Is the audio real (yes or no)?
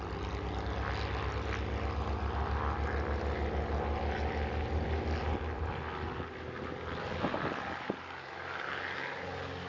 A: yes